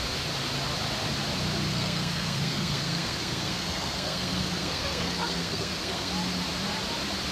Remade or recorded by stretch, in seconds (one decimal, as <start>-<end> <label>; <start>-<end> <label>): 0.0-1.7 recorded; 1.7-6.1 remade; 6.1-7.3 recorded